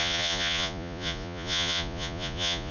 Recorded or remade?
remade